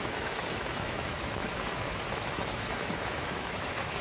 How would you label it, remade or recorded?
remade